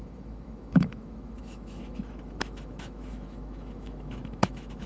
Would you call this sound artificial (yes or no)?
yes